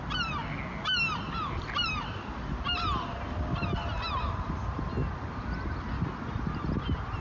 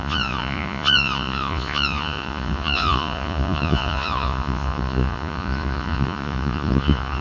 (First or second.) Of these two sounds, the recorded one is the first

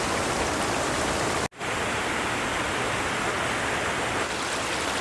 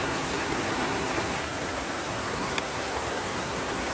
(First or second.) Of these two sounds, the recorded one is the first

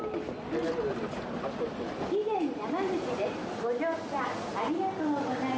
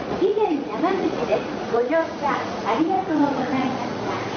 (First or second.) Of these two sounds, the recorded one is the first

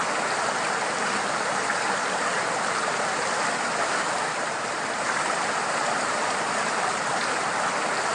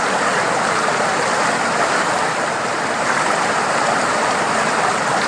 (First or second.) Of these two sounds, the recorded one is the second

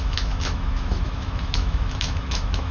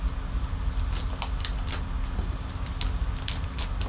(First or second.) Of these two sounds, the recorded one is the second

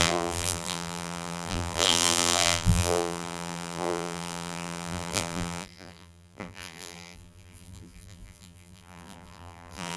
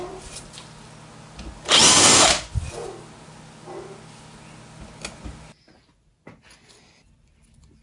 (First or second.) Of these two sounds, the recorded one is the second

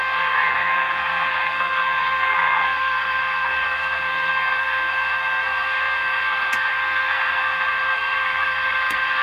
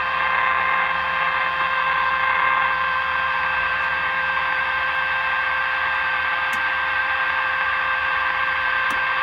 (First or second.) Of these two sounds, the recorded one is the second